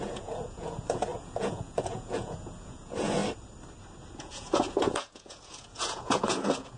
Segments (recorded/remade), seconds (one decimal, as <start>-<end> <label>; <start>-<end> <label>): 0.0-3.2 remade; 3.2-4.1 recorded; 4.1-6.8 remade